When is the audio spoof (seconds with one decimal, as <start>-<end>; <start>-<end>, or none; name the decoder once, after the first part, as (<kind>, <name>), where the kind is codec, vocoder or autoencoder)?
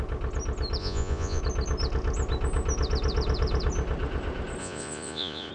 0.8-1.4 (vocoder, Vocos); 4.6-5.5